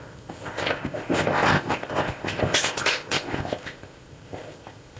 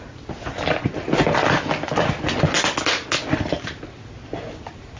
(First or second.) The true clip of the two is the second